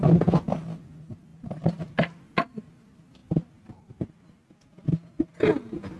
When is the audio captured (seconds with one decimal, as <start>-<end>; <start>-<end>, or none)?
0.0-6.0